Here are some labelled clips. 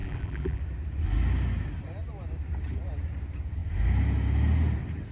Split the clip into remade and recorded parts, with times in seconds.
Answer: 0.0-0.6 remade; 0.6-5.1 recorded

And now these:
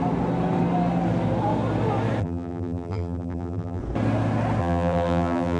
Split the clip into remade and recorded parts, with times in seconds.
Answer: 0.0-2.2 recorded; 2.2-3.8 remade; 3.8-4.6 recorded; 4.6-5.6 remade

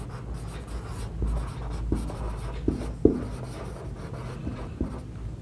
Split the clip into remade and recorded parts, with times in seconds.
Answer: 0.0-5.4 recorded

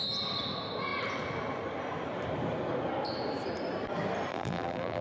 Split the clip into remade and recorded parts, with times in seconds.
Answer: 0.0-4.3 recorded; 4.3-5.0 remade

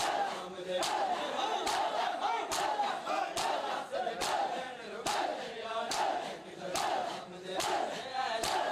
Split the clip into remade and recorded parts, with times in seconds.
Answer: 0.0-5.3 recorded; 5.3-5.8 remade; 5.8-8.7 recorded

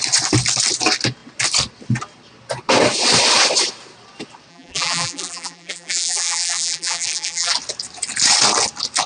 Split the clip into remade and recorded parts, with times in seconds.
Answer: 0.0-4.5 recorded; 4.5-7.5 remade; 7.5-9.1 recorded

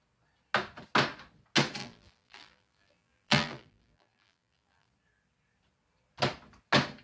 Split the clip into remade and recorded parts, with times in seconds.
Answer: 0.0-1.8 recorded; 1.8-4.9 remade; 4.9-7.0 recorded